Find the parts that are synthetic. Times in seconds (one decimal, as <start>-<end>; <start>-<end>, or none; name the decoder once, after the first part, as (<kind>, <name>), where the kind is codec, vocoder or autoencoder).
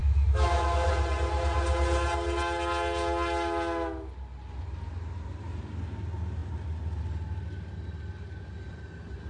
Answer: 0.0-0.9 (autoencoder, DAC-VAE)